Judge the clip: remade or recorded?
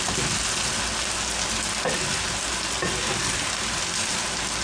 recorded